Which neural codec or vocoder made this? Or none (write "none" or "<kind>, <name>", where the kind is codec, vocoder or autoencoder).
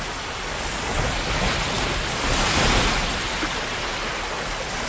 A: none